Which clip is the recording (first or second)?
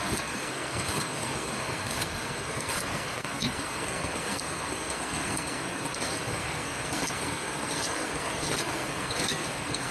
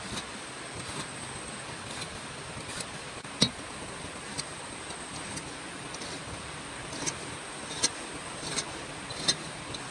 second